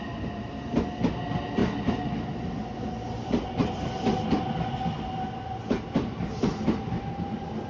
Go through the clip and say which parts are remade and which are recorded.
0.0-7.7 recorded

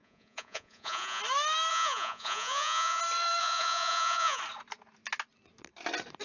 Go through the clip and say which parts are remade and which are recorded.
0.0-1.2 remade; 1.2-1.7 recorded; 1.7-3.0 remade; 3.0-3.4 recorded; 3.4-4.4 remade; 4.4-6.2 recorded

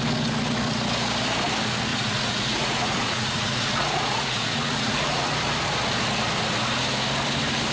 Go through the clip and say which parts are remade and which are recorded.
0.0-1.9 recorded; 1.9-5.3 remade; 5.3-7.7 recorded

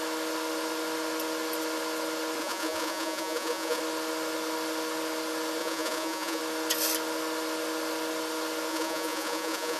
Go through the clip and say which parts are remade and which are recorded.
0.0-2.4 recorded; 2.4-3.8 remade; 3.8-5.6 recorded; 5.6-6.4 remade; 6.4-8.7 recorded; 8.7-9.8 remade

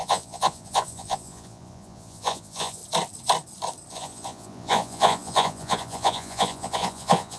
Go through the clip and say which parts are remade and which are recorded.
0.0-2.8 remade; 2.8-3.9 recorded; 3.9-7.4 remade

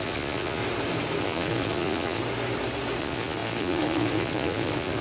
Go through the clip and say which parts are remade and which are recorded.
0.0-0.6 remade; 0.6-1.2 recorded; 1.2-2.2 remade; 2.2-3.0 recorded; 3.0-5.0 remade

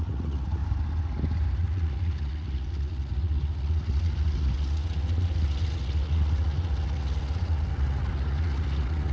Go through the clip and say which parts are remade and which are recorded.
0.0-0.6 remade; 0.6-1.6 recorded; 1.6-9.1 remade